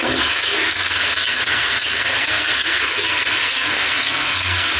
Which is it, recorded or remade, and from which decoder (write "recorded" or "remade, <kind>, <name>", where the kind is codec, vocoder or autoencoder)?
remade, codec, SNAC